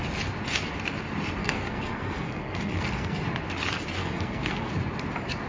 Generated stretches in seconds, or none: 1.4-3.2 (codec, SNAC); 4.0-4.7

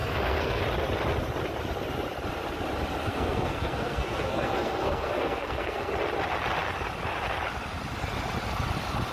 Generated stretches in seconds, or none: 0.0-0.6 (codec, SNAC); 3.0-5.9

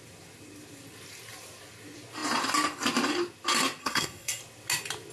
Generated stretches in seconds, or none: 3.8-4.4 (codec, SNAC)

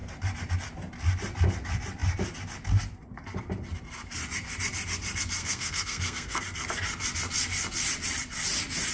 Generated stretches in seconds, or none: 5.4-6.4 (codec, SNAC)

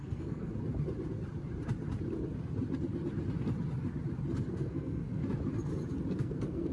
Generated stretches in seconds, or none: 0.0-0.5 (codec, SNAC); 4.5-5.2; 6.2-6.7

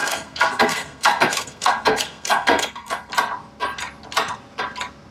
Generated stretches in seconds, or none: 0.0-3.1 (codec, SNAC)